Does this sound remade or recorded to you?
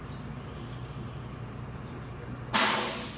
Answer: recorded